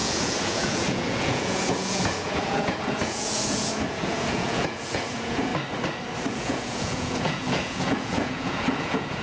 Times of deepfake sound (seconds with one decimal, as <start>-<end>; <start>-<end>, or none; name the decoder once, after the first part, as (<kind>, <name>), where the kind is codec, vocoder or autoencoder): 0.0-5.5 (vocoder, Vocos); 6.3-9.2